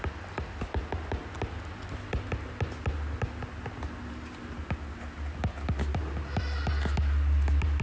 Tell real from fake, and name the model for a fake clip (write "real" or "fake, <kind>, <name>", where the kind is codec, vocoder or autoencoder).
real